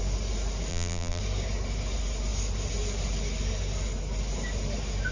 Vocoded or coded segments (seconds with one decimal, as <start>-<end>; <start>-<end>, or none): 0.7-1.2